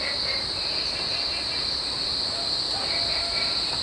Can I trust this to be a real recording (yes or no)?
yes